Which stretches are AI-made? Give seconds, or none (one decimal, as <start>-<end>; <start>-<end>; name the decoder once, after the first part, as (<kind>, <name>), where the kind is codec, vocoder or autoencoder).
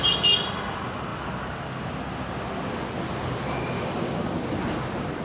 none